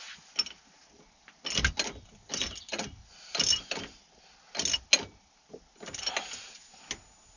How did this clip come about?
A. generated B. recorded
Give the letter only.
B